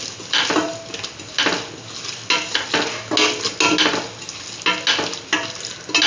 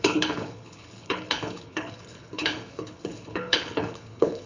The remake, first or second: second